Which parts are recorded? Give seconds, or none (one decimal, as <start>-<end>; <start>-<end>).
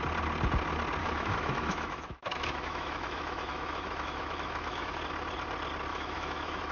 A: 0.0-1.0; 5.0-5.9